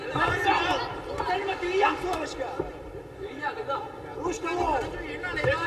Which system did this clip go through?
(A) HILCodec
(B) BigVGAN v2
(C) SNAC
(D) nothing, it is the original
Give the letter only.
D